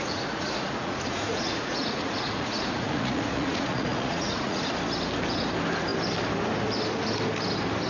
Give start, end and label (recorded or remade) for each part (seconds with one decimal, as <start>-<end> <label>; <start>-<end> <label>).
0.0-4.7 remade; 4.7-7.9 recorded